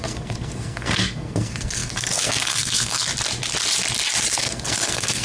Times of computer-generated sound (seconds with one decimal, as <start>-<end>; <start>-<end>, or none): 0.0-3.1; 4.3-5.2